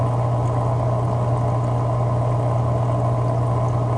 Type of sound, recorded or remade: recorded